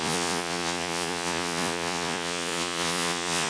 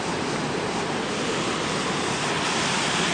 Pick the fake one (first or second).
first